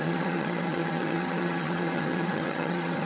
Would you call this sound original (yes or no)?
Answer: no